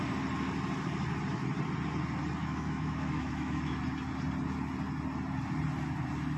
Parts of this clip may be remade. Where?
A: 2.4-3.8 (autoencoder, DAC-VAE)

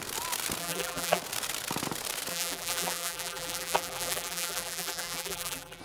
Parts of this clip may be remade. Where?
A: 0.6-1.2 (vocoder, BigVGAN v2); 2.3-5.8

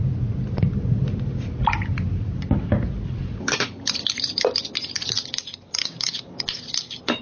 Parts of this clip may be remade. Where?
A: 5.8-6.4 (codec, DAC)

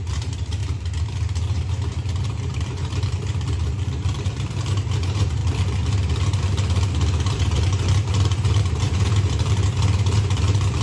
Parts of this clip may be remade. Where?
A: 0.0-0.6 (vocoder, BigVGAN v2); 2.2-5.4; 7.3-10.8

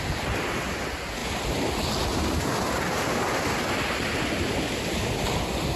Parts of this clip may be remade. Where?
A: none

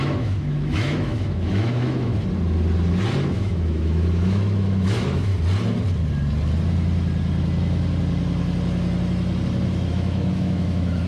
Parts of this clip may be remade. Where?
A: 0.0-2.1 (autoencoder, DAC-VAE); 3.3-5.3; 9.9-11.1

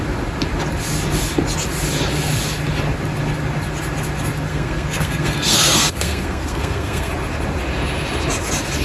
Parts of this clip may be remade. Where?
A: 4.5-7.1 (codec, SNAC)